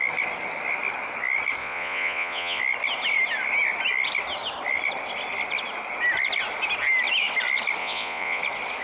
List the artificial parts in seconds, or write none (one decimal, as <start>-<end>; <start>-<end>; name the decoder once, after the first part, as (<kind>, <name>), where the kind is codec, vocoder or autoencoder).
1.6-2.6 (vocoder, Vocos); 7.8-8.4